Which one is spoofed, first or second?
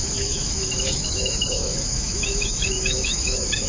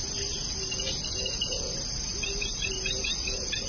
first